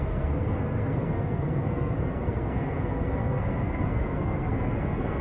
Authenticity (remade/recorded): remade